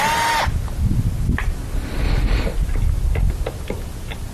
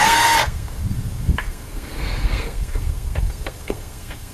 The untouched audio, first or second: first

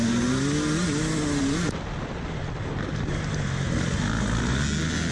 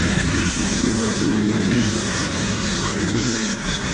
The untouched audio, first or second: first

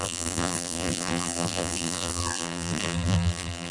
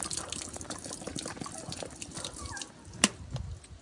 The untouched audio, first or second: second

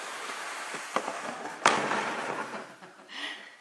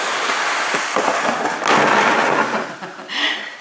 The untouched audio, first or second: second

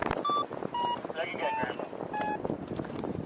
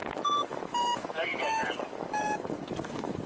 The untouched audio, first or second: first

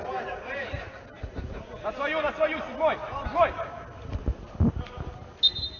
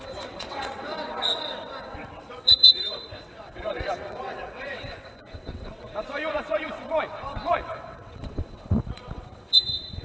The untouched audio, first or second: first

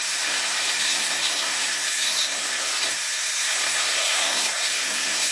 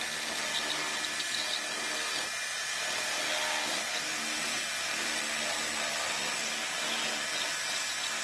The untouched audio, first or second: second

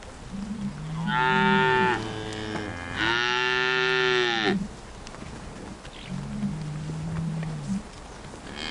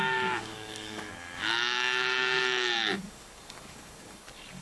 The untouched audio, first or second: first